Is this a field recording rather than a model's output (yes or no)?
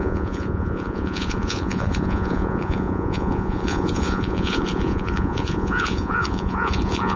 no